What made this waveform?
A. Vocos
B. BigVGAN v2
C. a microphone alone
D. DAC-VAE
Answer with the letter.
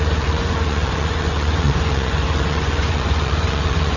A